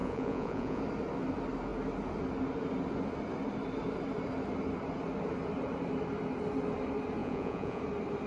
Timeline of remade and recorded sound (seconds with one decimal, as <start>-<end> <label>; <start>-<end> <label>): 0.0-0.8 remade; 0.8-7.2 recorded; 7.2-7.8 remade; 7.8-8.3 recorded